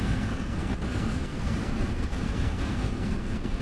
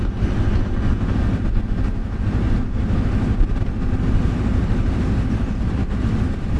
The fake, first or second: first